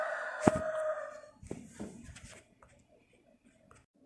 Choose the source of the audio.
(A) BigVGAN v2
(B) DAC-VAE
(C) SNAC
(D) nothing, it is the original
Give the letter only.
A